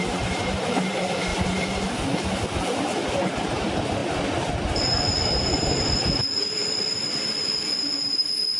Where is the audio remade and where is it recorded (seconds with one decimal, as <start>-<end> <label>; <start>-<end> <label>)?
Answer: 0.0-1.3 remade; 1.3-2.6 recorded; 2.6-4.0 remade; 4.0-8.6 recorded